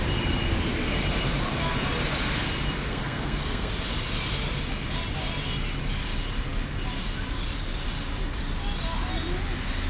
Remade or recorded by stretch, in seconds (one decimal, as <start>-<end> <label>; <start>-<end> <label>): 0.0-2.9 recorded; 2.9-3.7 remade; 3.7-9.9 recorded